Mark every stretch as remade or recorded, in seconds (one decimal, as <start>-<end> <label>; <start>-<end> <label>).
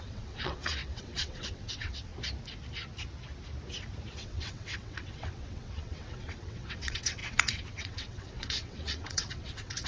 0.0-2.1 remade; 2.1-4.1 recorded; 4.1-9.9 remade